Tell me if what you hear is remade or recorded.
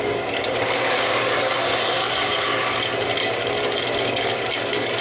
remade